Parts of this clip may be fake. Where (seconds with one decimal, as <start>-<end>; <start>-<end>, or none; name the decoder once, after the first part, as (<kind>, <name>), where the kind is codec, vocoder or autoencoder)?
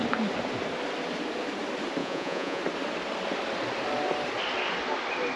2.0-2.6 (vocoder, Vocos)